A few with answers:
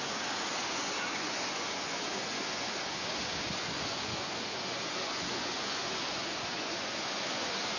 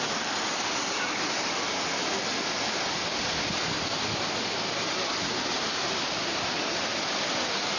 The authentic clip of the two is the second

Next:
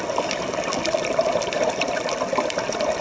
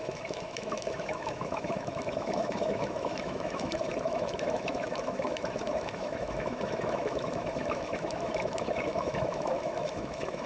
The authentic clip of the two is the first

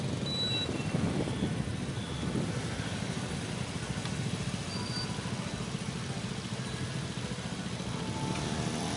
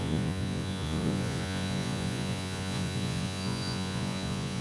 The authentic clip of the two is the first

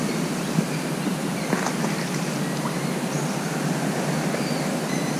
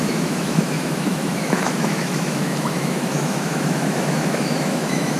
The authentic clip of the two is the first